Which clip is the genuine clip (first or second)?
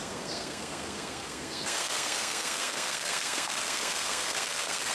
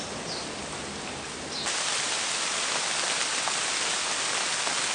second